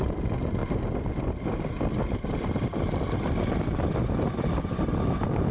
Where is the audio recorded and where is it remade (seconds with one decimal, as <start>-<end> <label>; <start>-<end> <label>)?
0.0-5.5 recorded